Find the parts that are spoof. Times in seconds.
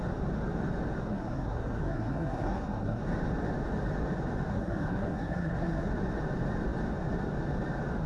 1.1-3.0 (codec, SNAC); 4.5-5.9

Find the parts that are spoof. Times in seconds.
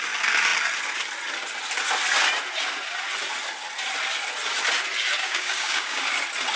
5.2-6.0 (codec, DAC)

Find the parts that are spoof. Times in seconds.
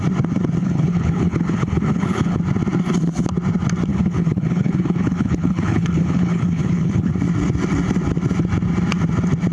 0.6-2.4 (codec, HILCodec); 3.9-7.1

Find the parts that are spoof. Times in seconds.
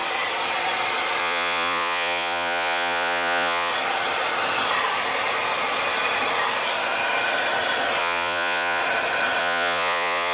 1.2-3.7 (vocoder, Vocos); 8.0-8.8; 9.4-10.3